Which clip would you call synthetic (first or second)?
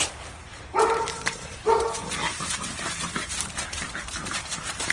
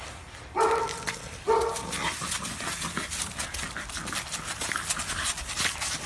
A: first